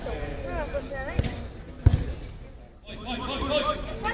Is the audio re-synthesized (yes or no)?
no